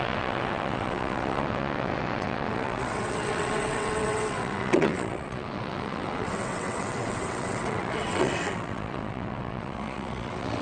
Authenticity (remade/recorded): remade